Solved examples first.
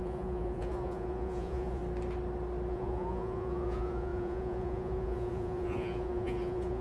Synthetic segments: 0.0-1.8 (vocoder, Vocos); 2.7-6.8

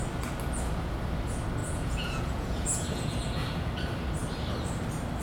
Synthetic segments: 1.6-3.7 (vocoder, Vocos)

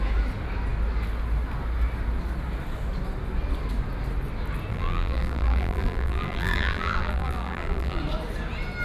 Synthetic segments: 4.7-8.0 (vocoder, BigVGAN v2)

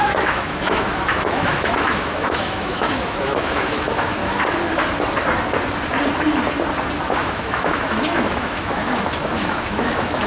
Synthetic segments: 0.0-4.2 (autoencoder, DAC-VAE); 7.1-10.3

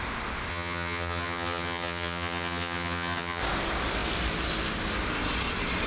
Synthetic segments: 0.5-3.4 (vocoder, HiFi-GAN)

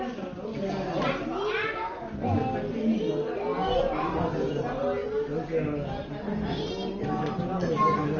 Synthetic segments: none

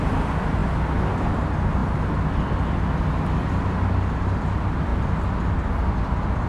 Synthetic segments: none